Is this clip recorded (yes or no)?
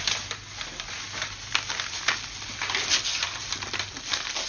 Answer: yes